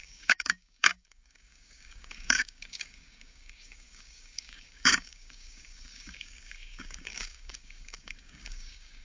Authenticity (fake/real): fake